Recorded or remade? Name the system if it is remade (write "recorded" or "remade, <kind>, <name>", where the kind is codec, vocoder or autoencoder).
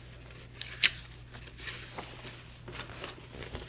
recorded